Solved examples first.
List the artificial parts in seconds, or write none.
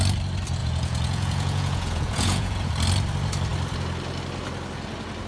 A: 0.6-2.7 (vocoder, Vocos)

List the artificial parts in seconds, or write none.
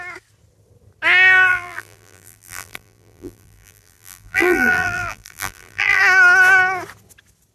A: 1.5-6.0 (vocoder, BigVGAN v2)